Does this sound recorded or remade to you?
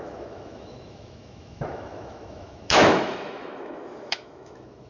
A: remade